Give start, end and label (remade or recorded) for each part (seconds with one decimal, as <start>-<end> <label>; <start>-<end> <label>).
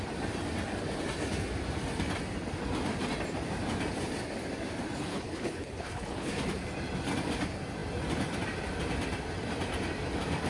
0.0-5.1 recorded; 5.1-6.3 remade; 6.3-10.5 recorded